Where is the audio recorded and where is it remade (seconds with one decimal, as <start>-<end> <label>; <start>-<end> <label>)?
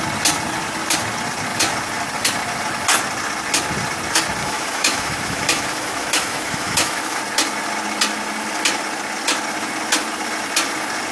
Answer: 0.0-4.4 recorded; 4.4-7.2 remade; 7.2-11.1 recorded